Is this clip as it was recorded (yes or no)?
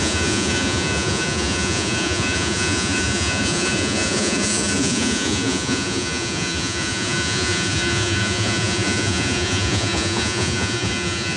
no